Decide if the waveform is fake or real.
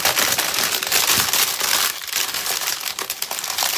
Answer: real